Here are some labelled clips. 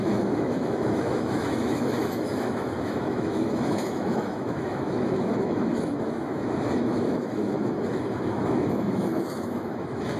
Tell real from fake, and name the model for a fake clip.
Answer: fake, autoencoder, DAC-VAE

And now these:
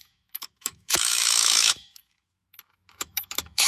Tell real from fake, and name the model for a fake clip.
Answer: fake, autoencoder, DAC-VAE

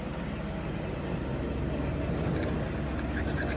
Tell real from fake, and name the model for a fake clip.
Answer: real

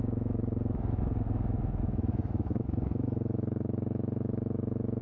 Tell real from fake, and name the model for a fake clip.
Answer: fake, autoencoder, DAC-VAE